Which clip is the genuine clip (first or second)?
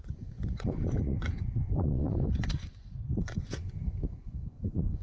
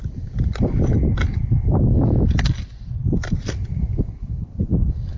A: second